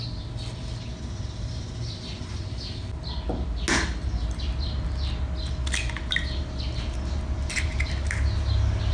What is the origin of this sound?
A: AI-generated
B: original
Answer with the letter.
B